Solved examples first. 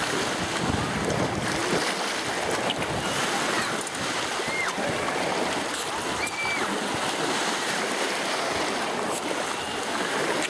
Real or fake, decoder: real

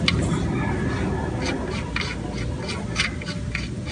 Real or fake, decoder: real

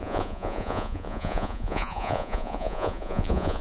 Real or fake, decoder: fake, vocoder, Vocos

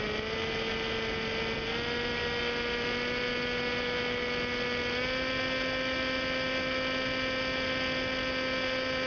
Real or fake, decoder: real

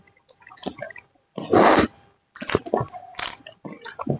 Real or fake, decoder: real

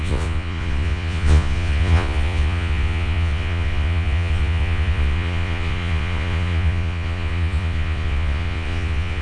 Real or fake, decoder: fake, vocoder, Vocos